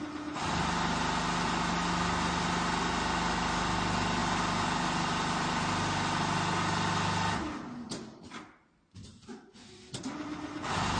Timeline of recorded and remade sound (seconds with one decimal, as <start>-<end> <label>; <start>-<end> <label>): 0.0-11.0 recorded